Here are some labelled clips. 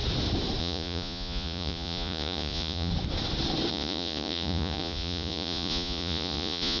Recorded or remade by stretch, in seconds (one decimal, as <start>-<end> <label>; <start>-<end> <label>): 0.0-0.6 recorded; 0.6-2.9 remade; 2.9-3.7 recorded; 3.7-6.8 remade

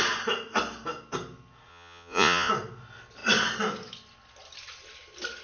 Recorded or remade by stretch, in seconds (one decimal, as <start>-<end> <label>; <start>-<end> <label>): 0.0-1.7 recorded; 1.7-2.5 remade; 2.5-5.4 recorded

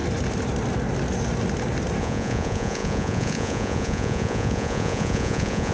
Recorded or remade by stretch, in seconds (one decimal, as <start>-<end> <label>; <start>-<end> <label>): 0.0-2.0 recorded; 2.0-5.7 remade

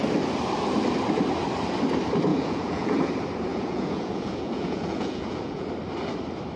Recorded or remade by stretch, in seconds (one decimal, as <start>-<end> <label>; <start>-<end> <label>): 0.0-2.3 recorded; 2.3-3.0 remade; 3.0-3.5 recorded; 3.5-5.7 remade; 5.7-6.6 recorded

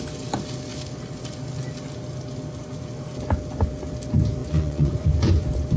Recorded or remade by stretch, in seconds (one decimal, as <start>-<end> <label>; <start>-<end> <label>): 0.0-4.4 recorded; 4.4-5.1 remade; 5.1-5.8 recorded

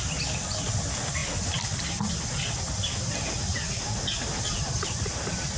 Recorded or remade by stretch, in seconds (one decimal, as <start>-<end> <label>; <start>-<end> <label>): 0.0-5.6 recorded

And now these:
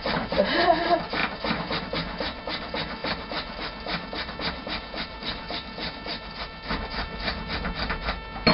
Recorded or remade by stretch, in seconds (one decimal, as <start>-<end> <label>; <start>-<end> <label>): 0.0-8.5 recorded